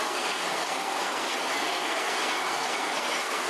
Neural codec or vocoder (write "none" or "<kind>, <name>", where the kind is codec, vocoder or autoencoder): codec, SNAC